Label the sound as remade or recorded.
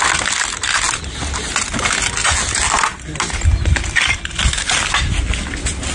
recorded